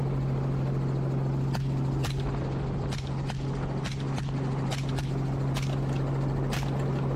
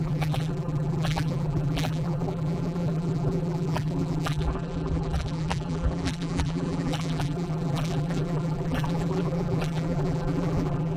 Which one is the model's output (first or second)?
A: second